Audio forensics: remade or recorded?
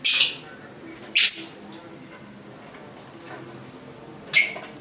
recorded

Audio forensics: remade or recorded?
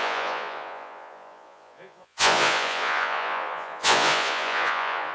remade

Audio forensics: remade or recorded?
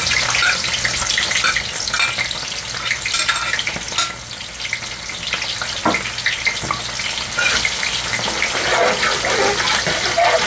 recorded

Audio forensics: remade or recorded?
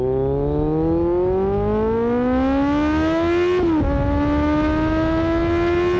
recorded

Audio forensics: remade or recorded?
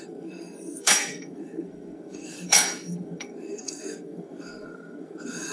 remade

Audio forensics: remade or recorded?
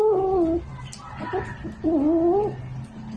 recorded